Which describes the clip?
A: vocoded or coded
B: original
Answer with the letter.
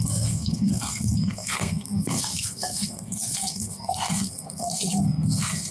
A